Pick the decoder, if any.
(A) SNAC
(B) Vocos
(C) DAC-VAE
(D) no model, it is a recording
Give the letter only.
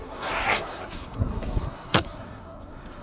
A